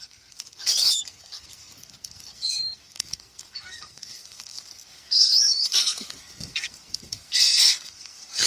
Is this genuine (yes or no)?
no